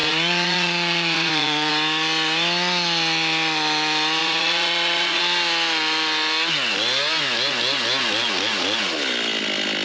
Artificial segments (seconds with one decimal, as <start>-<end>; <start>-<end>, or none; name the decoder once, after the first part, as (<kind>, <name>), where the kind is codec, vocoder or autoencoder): 0.0-1.7 (vocoder, Vocos); 4.2-5.2